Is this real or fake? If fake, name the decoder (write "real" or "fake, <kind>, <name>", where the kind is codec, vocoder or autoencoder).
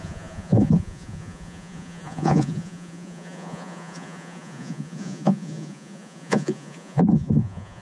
fake, vocoder, Vocos